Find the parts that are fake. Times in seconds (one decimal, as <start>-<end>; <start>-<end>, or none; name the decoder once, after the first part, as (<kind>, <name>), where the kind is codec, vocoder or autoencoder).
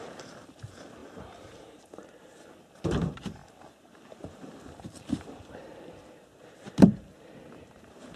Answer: 0.0-8.2 (vocoder, BigVGAN v2)